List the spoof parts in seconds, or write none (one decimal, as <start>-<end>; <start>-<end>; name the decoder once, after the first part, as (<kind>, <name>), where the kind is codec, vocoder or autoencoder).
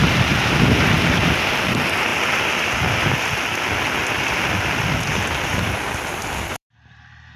1.1-2.1 (vocoder, BigVGAN v2); 6.5-7.4